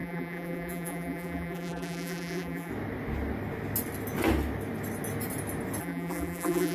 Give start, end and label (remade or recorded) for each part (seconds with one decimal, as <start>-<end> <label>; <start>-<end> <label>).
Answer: 0.0-2.7 remade; 2.7-5.8 recorded; 5.8-6.7 remade